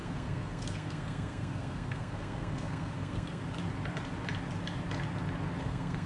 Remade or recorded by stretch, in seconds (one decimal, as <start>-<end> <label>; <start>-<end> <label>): 0.0-3.4 remade; 3.4-5.6 recorded; 5.6-6.1 remade